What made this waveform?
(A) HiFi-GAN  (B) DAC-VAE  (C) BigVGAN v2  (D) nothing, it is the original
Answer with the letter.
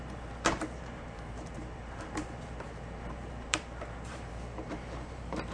C